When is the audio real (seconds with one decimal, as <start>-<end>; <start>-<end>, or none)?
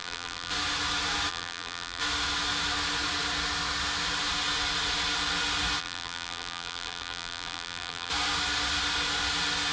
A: 0.5-1.3; 2.0-5.8; 8.1-9.7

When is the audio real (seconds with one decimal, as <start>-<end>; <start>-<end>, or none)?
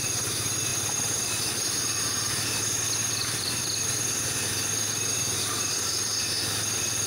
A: 0.0-0.7; 2.6-3.0; 6.2-7.1